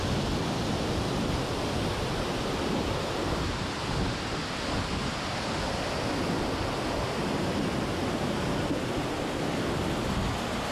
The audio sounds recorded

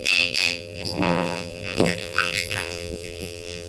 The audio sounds remade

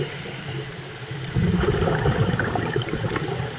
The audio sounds remade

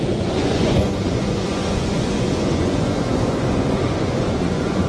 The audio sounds remade